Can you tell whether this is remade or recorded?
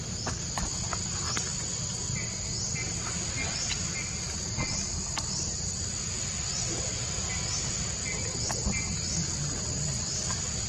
recorded